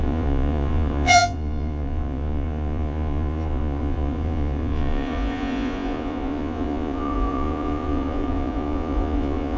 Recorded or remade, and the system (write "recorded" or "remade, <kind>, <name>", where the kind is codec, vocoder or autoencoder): remade, vocoder, Vocos